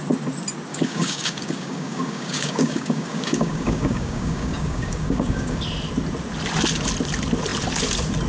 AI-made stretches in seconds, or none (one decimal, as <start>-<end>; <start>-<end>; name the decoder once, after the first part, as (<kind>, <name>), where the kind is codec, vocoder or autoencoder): 0.7-5.6 (codec, DAC)